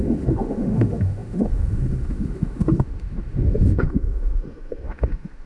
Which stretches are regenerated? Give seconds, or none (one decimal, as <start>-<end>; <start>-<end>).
0.0-5.5